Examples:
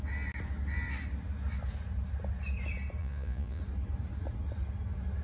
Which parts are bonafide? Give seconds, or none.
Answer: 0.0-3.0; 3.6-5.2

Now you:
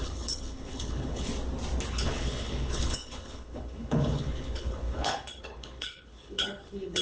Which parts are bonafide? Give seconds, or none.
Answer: 1.3-1.9

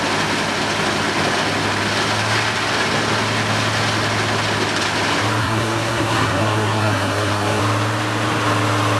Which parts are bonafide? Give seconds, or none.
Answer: 0.0-5.4; 7.6-9.0

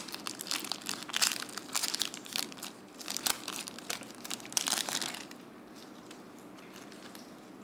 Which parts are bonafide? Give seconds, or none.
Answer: 0.0-7.6

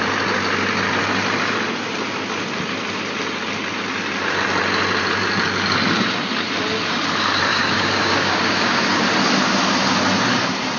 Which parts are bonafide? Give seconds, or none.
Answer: 0.0-7.5; 9.0-10.8

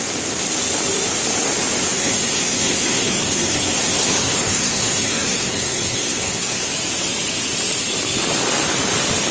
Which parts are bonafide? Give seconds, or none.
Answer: 0.0-2.0; 6.7-9.3

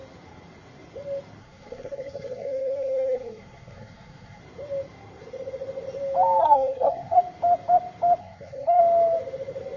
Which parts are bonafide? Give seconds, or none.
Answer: 0.0-1.4; 4.4-6.4; 7.2-8.2; 8.8-9.8

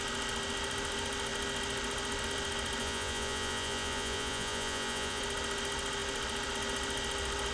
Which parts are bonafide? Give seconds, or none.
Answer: 0.0-2.8; 5.2-7.5